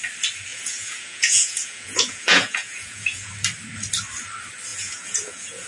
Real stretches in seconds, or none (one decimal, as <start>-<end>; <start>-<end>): 0.0-0.5; 3.3-4.7